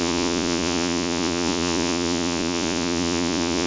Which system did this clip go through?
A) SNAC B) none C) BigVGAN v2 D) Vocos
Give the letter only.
D